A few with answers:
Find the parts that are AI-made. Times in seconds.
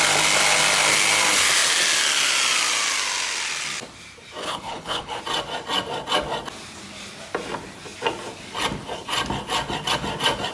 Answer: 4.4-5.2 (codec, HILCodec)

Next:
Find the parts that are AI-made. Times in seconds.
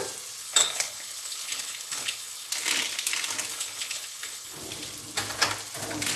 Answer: 0.4-2.5 (codec, HILCodec); 3.5-4.6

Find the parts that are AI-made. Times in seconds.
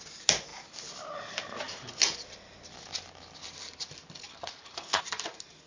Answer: 4.3-5.0 (codec, HILCodec)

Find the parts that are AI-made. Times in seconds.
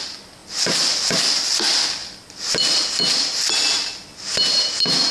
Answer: none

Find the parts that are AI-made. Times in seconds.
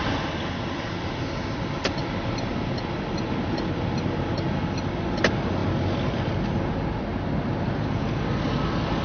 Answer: none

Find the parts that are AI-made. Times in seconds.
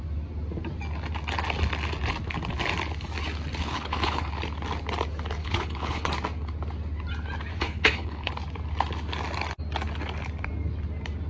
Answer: 3.6-4.3 (codec, HILCodec); 5.4-6.1; 7.5-8.3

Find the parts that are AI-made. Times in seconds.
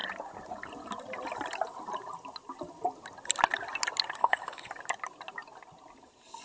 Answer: 4.2-4.7 (codec, HILCodec)